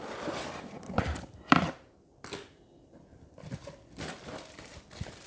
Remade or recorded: remade